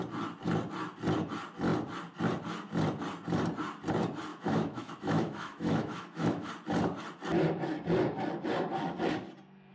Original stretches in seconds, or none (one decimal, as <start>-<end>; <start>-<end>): 0.0-4.3; 6.5-9.7